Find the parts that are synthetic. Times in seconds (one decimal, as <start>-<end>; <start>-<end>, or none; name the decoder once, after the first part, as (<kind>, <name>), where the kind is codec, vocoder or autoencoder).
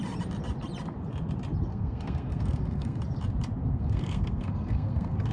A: 1.7-3.0 (codec, SNAC); 3.6-5.3